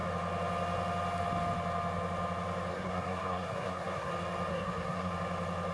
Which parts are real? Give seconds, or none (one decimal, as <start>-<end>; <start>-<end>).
0.0-2.7; 4.1-4.5; 5.1-5.7